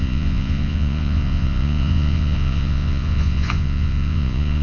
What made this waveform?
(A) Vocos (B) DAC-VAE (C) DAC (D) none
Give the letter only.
A